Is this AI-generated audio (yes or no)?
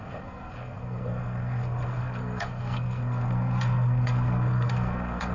yes